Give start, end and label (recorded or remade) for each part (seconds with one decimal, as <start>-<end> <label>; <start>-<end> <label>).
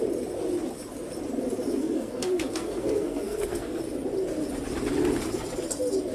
0.0-1.8 recorded; 1.8-3.8 remade; 3.8-6.1 recorded